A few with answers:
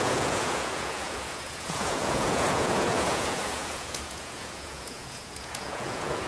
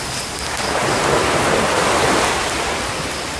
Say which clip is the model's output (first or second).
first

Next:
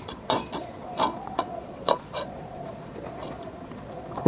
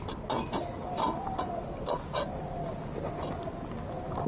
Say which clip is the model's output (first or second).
first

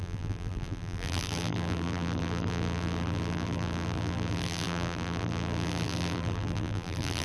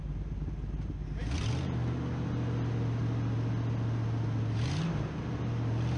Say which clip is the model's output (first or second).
first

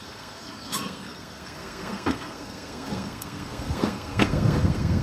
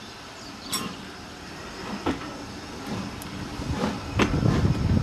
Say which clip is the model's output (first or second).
first